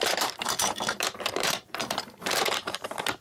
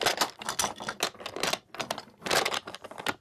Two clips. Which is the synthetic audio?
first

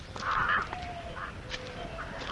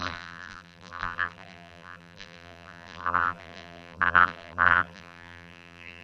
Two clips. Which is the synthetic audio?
second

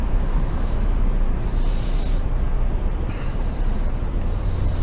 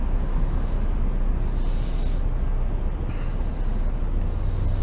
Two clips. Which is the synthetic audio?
first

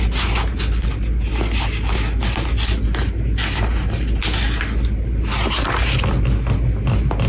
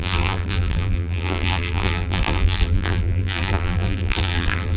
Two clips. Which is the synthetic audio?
second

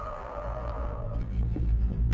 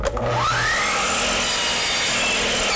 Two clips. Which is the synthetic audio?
first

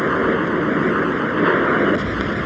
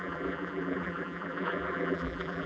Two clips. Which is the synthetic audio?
second